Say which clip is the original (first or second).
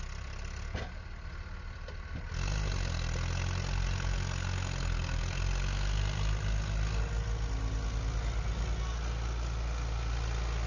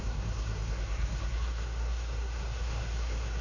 first